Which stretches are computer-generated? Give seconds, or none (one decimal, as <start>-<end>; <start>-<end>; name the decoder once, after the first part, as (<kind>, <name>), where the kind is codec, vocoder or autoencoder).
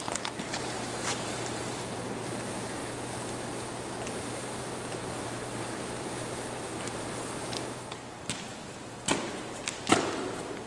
0.0-2.8 (vocoder, BigVGAN v2); 3.7-8.5